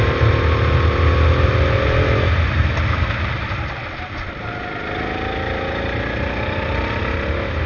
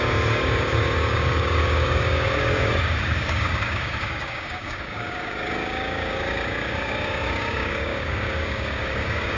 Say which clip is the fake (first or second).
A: second